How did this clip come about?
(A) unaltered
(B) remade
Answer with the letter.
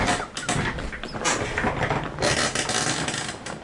A